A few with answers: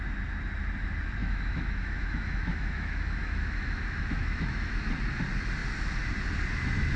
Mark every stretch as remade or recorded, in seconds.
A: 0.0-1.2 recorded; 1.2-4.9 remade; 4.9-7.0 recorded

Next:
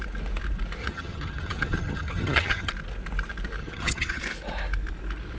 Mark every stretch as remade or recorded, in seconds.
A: 0.0-0.8 recorded; 0.8-2.7 remade; 2.7-3.6 recorded; 3.6-4.2 remade; 4.2-5.4 recorded